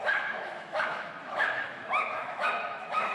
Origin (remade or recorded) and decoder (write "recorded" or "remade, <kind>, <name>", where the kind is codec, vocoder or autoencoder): remade, autoencoder, DAC-VAE